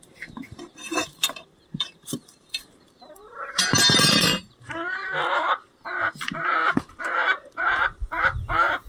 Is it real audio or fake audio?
fake